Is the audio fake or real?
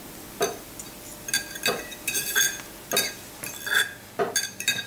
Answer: real